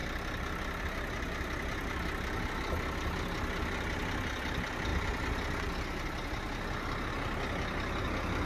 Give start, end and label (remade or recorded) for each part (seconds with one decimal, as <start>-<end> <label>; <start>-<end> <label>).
0.0-8.5 recorded